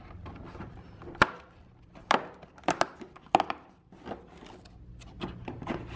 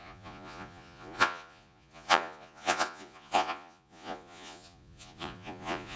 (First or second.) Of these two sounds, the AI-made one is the second